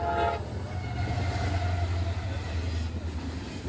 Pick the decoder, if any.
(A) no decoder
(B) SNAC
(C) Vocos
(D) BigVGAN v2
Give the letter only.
A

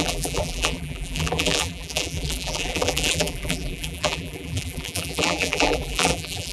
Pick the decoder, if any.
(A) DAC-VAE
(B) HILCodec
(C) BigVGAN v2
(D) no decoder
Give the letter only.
C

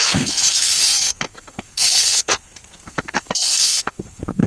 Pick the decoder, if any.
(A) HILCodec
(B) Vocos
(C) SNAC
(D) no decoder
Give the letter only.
C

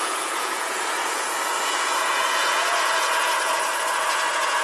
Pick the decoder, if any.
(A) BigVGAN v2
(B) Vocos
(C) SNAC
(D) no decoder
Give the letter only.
B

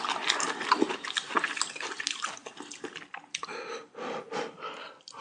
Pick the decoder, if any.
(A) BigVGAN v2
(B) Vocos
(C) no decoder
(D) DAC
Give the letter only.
C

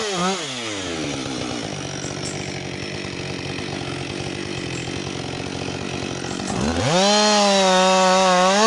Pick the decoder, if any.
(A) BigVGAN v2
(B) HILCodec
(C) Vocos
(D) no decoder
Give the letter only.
D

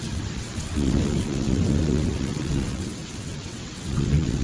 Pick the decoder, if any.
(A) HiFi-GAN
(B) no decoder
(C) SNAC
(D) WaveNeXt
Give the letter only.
D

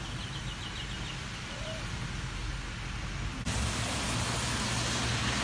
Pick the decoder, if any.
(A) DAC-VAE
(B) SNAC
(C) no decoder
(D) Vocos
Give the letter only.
C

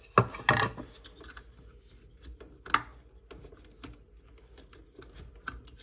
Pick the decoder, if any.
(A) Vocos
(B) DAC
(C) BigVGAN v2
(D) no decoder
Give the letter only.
D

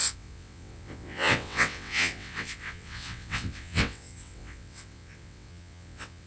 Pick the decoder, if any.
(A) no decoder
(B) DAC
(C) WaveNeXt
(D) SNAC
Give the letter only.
C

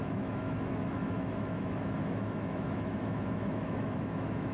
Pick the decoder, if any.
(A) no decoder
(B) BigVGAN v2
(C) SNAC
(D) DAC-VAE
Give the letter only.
D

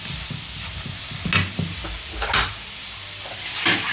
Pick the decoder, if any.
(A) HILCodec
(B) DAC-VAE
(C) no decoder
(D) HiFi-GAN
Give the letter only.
C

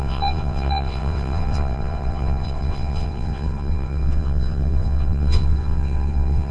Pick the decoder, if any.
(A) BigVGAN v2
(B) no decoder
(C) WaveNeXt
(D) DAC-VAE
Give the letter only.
C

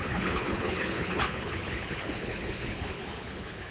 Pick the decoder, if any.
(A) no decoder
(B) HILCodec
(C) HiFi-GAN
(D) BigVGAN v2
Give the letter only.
B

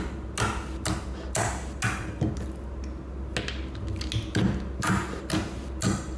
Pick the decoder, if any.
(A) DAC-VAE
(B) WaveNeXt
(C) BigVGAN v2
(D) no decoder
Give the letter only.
D